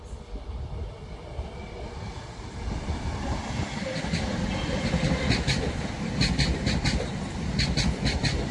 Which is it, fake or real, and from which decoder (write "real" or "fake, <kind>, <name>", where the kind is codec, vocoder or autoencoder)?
real